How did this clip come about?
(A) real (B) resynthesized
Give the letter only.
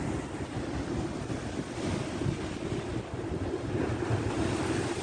A